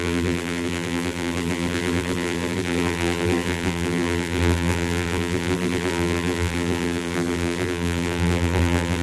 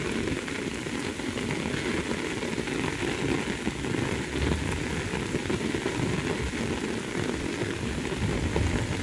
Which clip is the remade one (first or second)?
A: first